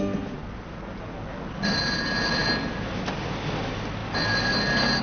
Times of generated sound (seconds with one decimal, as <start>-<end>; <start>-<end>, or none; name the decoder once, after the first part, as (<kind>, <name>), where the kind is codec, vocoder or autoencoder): none